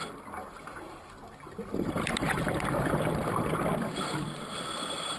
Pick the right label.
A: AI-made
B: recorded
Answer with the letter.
B